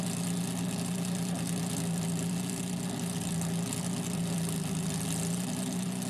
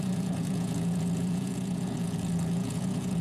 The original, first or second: first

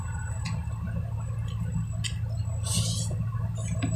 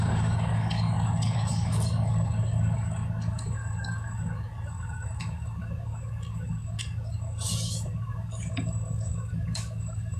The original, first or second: first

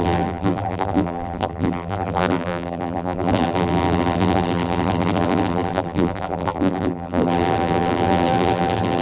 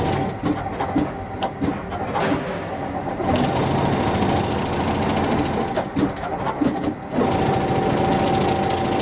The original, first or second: second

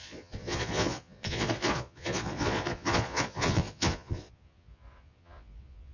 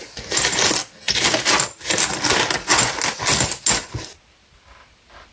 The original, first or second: second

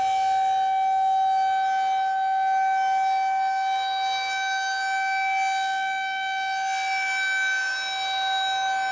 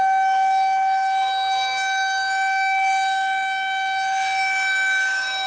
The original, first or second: first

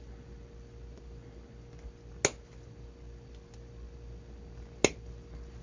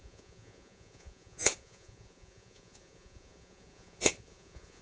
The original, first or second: first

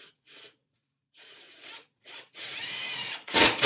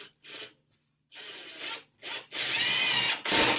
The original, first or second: second